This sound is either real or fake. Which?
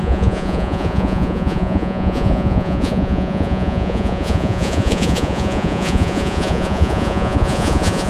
fake